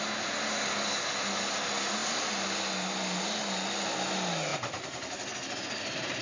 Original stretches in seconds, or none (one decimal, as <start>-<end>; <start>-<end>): 0.0-6.2